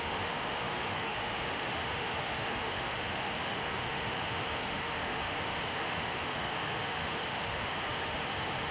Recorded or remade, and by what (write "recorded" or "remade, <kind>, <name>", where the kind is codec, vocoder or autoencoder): remade, autoencoder, DAC-VAE